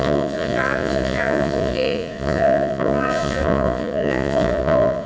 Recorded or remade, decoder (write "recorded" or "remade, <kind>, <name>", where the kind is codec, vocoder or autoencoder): remade, vocoder, Vocos